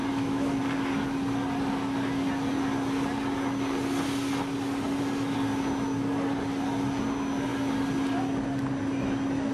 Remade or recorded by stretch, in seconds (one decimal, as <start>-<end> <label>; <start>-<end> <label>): 0.0-0.6 remade; 0.6-9.5 recorded